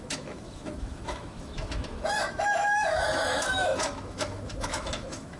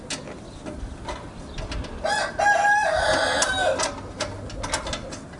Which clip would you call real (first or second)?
second